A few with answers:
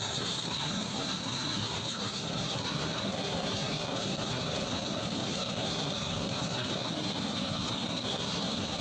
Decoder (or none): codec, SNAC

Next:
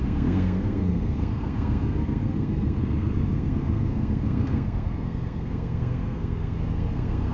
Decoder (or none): codec, SNAC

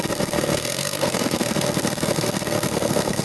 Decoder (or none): codec, SNAC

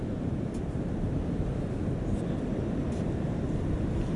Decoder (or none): none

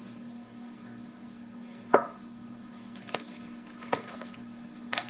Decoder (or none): codec, SNAC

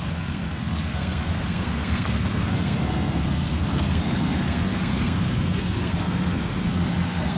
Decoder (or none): codec, SNAC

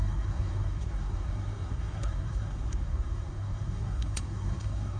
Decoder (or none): codec, SNAC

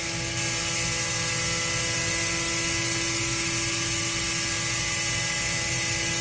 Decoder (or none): none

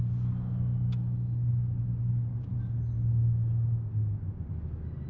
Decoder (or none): none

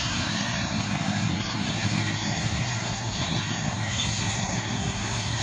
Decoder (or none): codec, SNAC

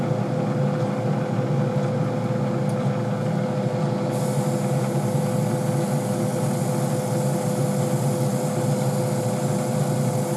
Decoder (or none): none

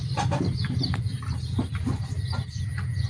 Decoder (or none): none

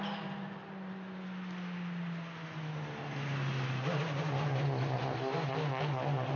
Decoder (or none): none